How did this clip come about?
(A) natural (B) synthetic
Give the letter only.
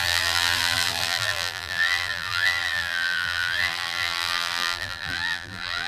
B